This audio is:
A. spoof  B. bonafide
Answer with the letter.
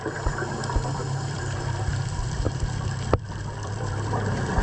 A